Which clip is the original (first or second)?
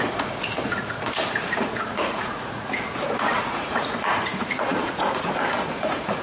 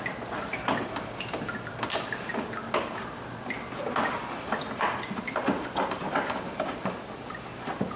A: second